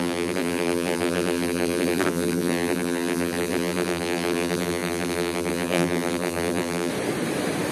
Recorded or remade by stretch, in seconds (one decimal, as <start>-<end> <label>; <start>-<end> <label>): 0.0-6.9 remade; 6.9-7.7 recorded

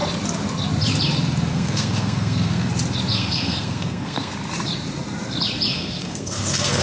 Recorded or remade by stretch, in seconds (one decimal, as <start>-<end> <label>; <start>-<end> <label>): 0.0-1.5 recorded; 1.5-2.7 remade; 2.7-3.1 recorded; 3.1-4.3 remade; 4.3-5.7 recorded; 5.7-6.8 remade

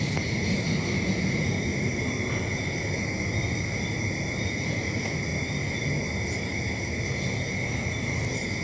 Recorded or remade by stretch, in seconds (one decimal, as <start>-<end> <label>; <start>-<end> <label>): 0.0-1.7 remade; 1.7-4.5 recorded; 4.5-5.3 remade; 5.3-8.6 recorded

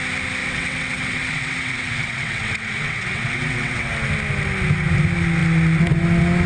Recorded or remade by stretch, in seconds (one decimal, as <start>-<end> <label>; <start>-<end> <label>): 0.0-0.4 recorded; 0.4-3.9 remade; 3.9-6.5 recorded